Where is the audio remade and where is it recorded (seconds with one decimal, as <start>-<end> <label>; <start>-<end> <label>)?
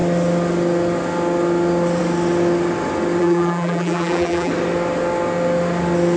0.0-3.2 recorded; 3.2-4.5 remade; 4.5-6.2 recorded